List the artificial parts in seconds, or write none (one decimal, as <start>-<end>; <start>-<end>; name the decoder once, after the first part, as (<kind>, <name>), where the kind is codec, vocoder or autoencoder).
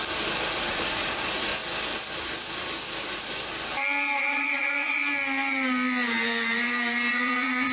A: 0.6-1.5 (vocoder, Vocos); 4.2-5.0; 7.1-7.7